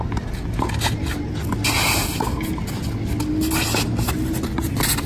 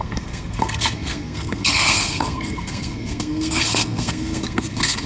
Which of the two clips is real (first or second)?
first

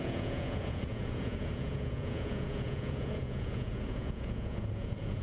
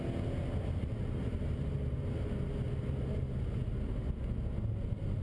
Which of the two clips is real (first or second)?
second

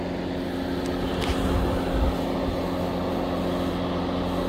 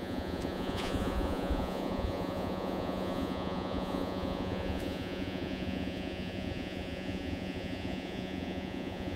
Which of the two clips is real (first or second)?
first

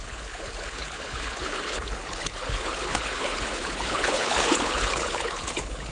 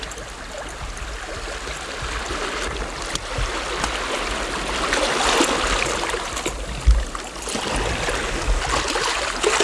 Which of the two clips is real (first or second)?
second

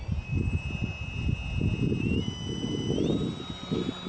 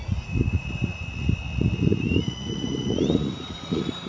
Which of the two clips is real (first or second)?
first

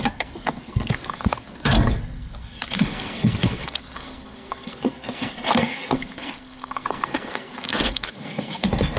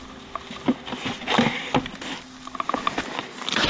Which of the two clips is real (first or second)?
second